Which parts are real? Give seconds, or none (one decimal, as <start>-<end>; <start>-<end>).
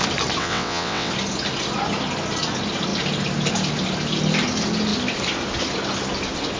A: 0.0-0.4; 1.1-6.6